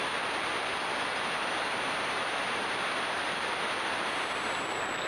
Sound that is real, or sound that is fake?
real